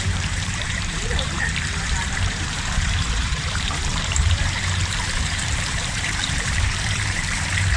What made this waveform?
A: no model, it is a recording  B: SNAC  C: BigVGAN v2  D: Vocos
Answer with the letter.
C